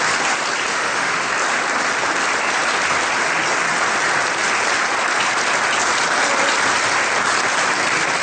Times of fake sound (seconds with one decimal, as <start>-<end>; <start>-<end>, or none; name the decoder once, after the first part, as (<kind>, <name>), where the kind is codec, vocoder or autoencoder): 0.7-1.3 (autoencoder, DAC-VAE)